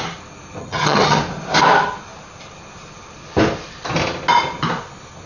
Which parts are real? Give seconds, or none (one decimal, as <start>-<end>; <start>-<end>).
0.0-0.6; 1.2-5.3